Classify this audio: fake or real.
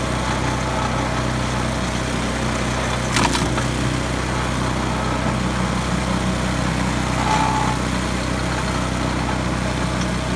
real